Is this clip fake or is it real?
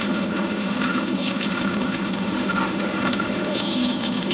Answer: fake